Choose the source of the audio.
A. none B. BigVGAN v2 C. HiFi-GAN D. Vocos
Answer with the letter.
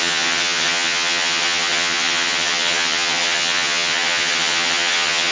C